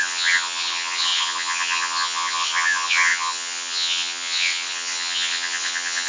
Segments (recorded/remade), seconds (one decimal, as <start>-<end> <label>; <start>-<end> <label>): 0.0-6.1 remade